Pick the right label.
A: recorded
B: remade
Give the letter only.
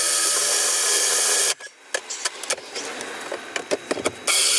A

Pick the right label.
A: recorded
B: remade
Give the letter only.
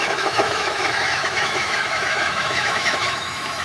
B